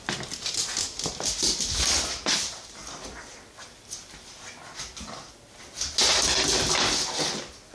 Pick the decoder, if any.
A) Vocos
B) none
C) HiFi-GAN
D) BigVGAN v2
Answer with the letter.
B